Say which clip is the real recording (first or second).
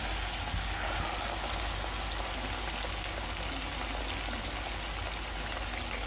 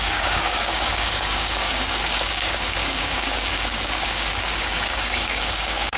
first